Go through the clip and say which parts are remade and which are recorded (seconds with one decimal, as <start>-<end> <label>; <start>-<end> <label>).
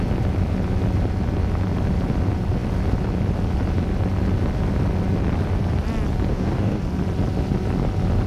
0.0-6.3 recorded; 6.3-6.8 remade; 6.8-8.3 recorded